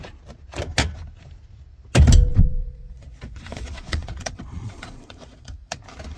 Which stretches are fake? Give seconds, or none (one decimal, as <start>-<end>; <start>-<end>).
2.3-5.8